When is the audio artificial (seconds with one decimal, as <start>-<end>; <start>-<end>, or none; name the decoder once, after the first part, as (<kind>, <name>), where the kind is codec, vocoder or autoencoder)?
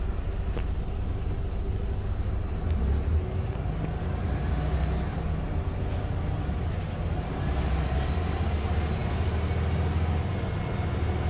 none